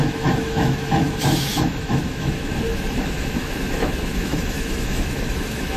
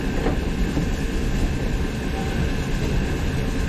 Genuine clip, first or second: second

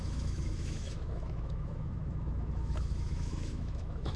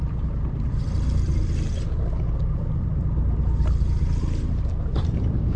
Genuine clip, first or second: second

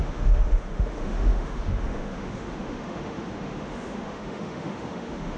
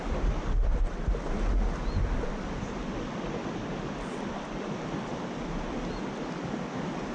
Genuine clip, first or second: second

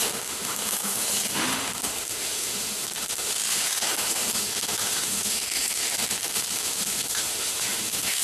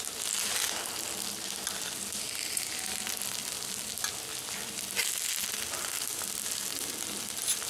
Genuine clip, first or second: second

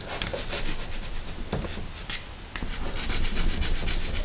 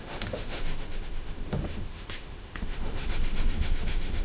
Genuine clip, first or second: first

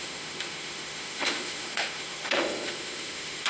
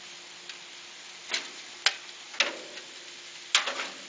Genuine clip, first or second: second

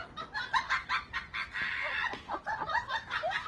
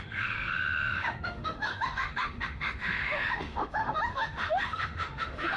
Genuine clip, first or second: first